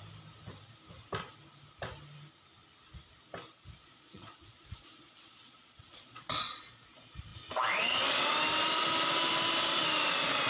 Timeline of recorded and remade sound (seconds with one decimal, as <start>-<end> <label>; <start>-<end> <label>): 0.0-3.8 recorded; 3.8-6.6 remade; 6.6-10.5 recorded